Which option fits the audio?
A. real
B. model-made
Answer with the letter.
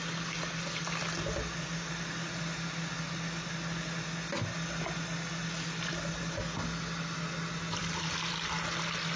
A